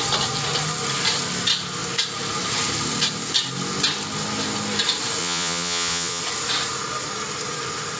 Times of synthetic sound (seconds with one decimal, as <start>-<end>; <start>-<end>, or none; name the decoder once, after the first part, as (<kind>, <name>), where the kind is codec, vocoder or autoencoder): 5.2-6.2 (vocoder, Vocos)